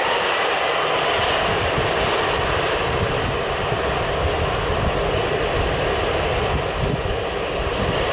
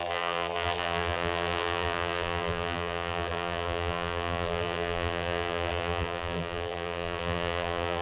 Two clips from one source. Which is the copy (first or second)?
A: second